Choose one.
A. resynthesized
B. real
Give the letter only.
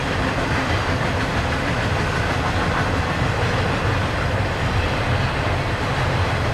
B